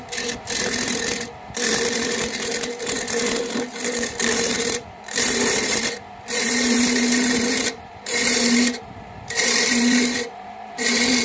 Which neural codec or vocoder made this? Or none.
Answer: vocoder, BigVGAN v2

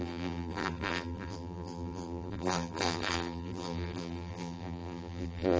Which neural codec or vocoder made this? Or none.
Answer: vocoder, BigVGAN v2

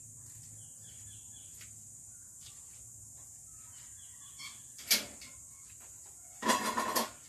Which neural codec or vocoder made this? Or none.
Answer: none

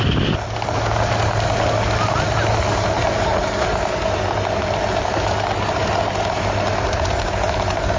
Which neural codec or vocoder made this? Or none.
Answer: none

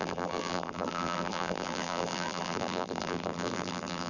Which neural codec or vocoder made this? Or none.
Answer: vocoder, BigVGAN v2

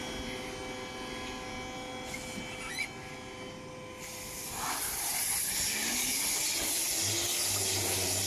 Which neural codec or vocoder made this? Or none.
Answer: none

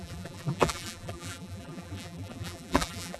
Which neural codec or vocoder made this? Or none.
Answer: vocoder, BigVGAN v2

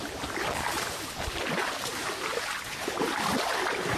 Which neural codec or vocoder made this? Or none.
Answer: none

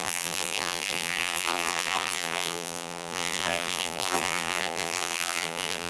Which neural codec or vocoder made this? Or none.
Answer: vocoder, BigVGAN v2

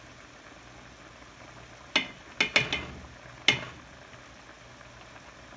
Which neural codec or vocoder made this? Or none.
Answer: none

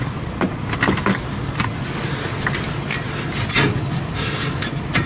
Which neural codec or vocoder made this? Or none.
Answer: none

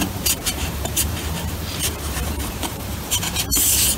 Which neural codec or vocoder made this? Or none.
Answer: vocoder, BigVGAN v2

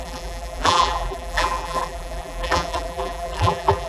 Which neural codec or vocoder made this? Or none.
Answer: vocoder, BigVGAN v2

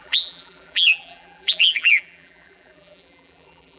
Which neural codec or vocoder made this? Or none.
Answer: vocoder, BigVGAN v2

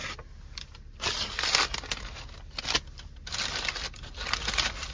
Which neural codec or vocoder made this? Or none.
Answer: none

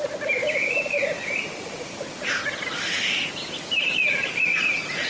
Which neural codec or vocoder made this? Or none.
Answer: none